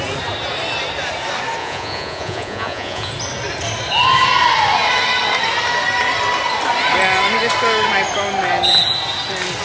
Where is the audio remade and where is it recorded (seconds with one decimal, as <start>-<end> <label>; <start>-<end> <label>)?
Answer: 0.0-1.6 recorded; 1.6-3.1 remade; 3.1-9.6 recorded